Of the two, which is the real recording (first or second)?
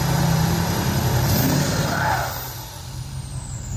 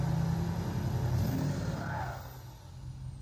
second